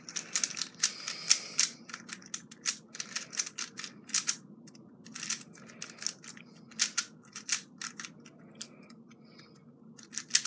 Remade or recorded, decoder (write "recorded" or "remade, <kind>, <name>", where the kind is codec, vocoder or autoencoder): recorded